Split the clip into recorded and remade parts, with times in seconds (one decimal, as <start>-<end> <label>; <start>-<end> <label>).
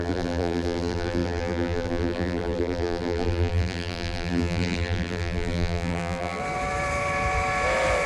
0.0-6.4 remade; 6.4-8.1 recorded